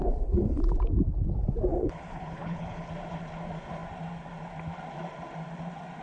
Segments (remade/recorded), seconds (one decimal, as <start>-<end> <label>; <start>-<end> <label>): 0.0-0.6 remade; 0.6-1.7 recorded; 1.7-2.9 remade; 2.9-6.0 recorded